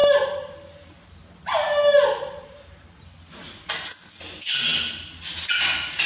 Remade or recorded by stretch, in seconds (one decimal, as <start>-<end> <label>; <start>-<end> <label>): 0.0-6.1 recorded